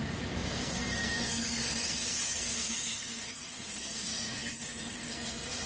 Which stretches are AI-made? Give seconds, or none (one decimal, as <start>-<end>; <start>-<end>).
0.0-5.7